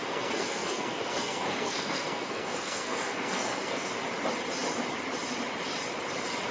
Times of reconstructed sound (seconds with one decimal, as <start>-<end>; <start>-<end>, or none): 0.0-3.9